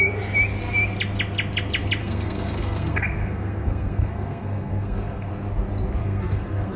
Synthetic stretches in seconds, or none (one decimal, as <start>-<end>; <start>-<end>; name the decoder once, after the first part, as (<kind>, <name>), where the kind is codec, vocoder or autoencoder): 2.0-5.3 (codec, SNAC); 6.0-6.8